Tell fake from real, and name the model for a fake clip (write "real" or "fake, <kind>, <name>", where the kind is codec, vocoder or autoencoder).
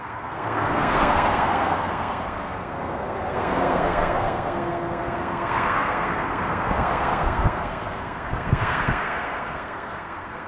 fake, codec, SNAC